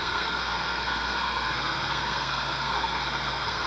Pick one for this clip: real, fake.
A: fake